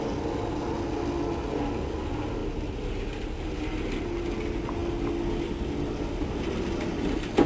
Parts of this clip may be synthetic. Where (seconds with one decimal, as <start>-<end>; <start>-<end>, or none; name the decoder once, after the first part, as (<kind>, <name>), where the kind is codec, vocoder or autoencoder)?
none